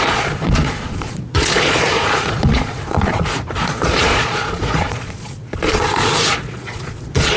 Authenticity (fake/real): fake